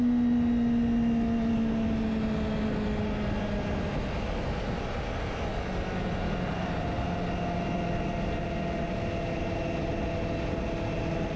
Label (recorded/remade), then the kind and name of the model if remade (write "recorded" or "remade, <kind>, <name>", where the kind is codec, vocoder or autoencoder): recorded